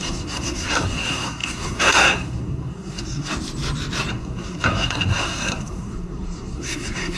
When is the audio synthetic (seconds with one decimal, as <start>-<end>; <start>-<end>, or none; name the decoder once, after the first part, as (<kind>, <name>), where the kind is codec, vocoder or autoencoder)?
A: 0.0-3.3 (codec, SNAC); 4.1-7.2